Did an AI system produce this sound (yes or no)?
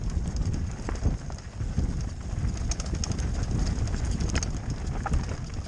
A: no